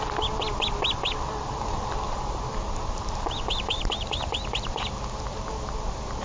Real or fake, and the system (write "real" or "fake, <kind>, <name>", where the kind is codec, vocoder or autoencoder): real